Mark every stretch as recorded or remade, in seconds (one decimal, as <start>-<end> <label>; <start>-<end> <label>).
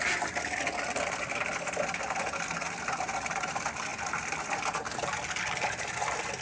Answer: 0.0-6.4 recorded